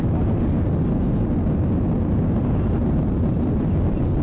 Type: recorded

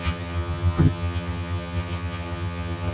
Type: remade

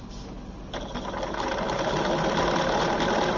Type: recorded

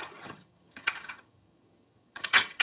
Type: remade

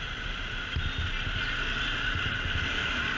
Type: recorded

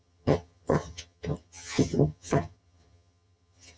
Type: remade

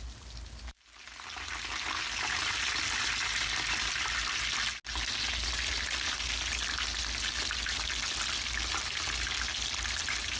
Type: recorded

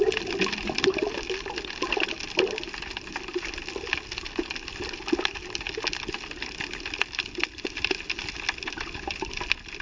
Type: recorded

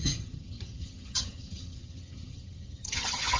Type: remade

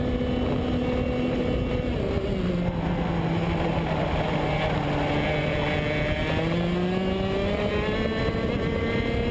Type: recorded